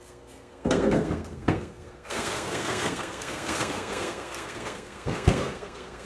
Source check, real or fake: fake